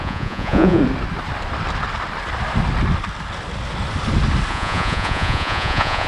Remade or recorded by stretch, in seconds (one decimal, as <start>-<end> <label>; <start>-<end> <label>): 0.0-0.8 remade; 0.8-4.5 recorded; 4.5-6.1 remade